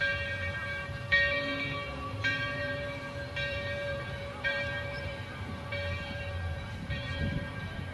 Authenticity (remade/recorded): remade